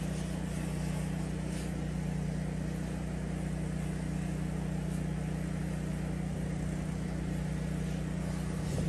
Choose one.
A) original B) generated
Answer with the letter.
A